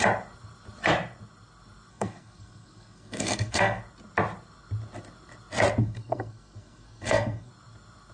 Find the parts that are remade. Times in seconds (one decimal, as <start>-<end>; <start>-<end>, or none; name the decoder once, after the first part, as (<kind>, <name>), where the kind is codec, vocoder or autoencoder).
1.9-3.8 (codec, SNAC); 5.8-7.5